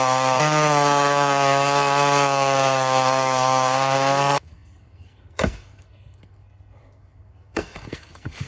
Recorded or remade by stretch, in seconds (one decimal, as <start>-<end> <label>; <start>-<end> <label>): 0.0-8.5 remade